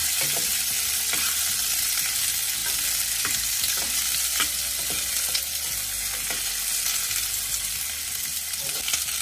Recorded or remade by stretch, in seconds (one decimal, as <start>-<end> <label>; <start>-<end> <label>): 0.0-9.2 recorded